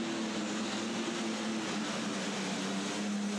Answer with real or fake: real